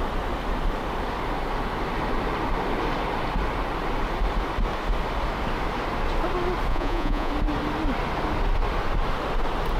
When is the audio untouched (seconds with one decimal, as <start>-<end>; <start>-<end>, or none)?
0.0-6.7; 7.3-9.8